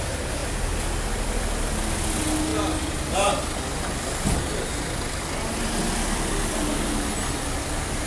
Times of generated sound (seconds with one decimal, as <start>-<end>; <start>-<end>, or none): 2.5-3.6